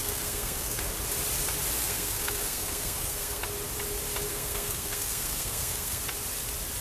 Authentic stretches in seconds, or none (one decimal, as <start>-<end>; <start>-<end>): 0.8-1.8; 3.4-4.3; 6.0-6.8